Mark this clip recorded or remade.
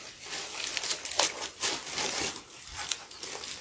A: recorded